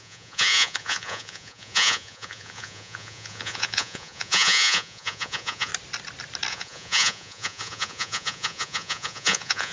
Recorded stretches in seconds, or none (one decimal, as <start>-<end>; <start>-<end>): 5.7-6.5